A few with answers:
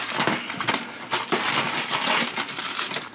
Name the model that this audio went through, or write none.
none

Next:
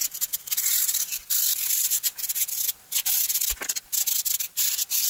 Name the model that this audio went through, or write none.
vocoder, BigVGAN v2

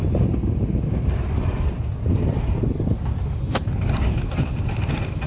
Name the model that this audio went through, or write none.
none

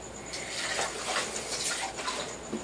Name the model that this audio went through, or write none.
none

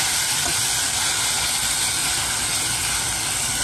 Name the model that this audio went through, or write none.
none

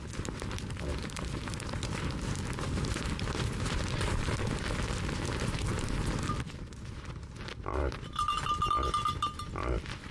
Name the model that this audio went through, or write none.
vocoder, BigVGAN v2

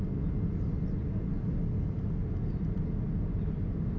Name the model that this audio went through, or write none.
none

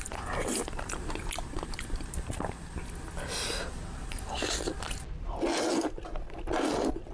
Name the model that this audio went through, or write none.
none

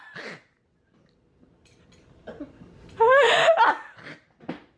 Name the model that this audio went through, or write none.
none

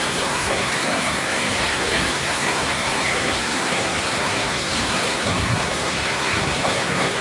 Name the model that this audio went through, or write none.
codec, SNAC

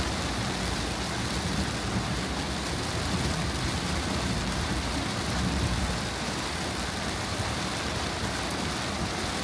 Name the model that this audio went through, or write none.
none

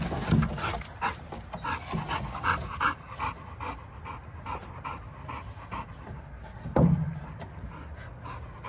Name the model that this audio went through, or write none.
none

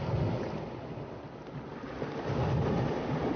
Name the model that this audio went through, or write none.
none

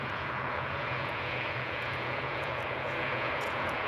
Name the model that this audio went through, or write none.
vocoder, Vocos